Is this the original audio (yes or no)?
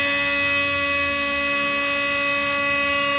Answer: yes